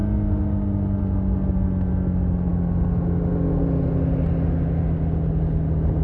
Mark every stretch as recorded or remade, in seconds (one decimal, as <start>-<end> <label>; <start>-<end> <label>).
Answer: 0.0-6.0 recorded